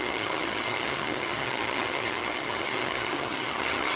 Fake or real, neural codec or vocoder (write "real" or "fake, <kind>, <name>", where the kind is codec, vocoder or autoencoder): fake, vocoder, HiFi-GAN